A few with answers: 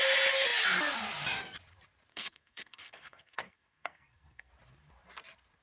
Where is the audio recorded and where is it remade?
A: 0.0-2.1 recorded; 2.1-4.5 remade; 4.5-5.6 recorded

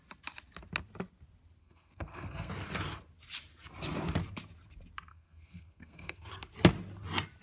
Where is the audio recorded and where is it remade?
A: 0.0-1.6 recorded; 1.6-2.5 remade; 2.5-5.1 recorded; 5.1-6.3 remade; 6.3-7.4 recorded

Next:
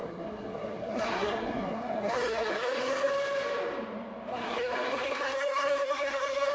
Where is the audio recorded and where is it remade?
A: 0.0-3.1 remade; 3.1-4.3 recorded; 4.3-6.5 remade

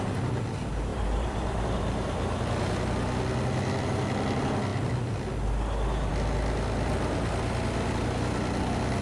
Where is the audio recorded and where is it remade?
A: 0.0-0.9 recorded; 0.9-1.8 remade; 1.8-9.0 recorded